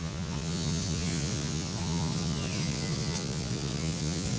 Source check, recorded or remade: remade